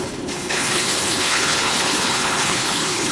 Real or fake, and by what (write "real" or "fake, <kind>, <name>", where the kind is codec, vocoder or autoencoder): fake, codec, HILCodec